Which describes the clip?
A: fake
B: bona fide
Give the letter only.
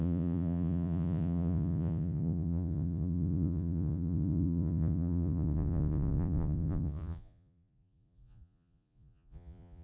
A